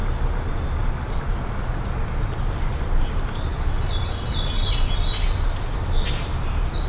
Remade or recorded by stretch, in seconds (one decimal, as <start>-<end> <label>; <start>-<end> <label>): 0.0-6.9 recorded